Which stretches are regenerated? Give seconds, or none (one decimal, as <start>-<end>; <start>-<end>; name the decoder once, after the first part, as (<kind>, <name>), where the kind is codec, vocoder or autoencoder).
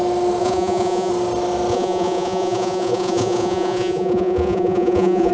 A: 0.4-1.1 (vocoder, Vocos); 1.7-5.3